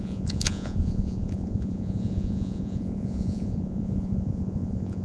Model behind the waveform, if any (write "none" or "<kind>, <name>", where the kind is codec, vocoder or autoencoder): vocoder, Vocos